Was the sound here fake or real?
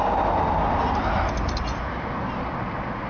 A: real